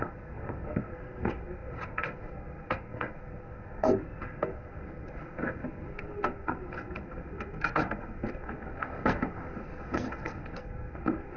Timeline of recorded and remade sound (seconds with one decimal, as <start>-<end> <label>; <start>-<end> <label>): 0.0-11.4 remade